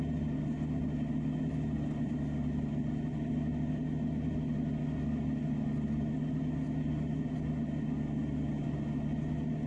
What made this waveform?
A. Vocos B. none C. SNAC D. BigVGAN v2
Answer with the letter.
B